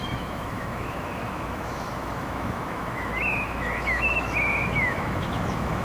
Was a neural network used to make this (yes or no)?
yes